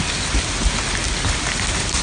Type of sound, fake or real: real